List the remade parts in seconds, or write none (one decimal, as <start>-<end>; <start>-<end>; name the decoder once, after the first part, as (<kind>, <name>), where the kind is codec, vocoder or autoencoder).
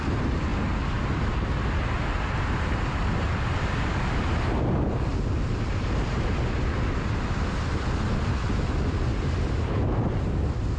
none